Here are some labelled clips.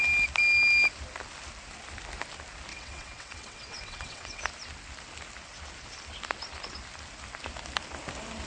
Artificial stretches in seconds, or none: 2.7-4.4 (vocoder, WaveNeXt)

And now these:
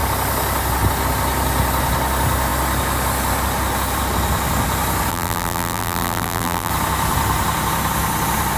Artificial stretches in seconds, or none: 5.1-6.7 (vocoder, BigVGAN v2)

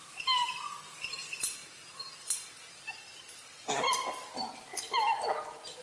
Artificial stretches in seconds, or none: none

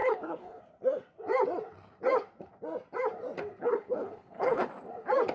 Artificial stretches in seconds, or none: 0.0-0.6 (codec, HILCodec); 3.6-4.7

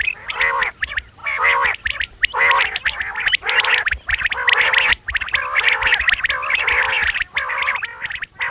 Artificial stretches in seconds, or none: none

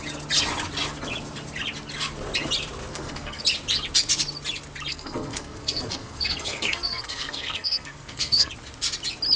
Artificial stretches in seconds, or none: 2.9-3.4 (codec, SNAC); 4.9-8.5

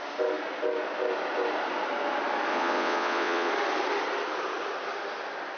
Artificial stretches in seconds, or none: 2.5-3.5 (vocoder, WaveNeXt)

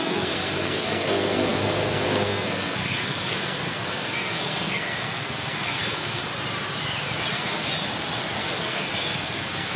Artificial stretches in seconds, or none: 0.0-6.2 (codec, SNAC); 7.3-7.7; 8.4-9.8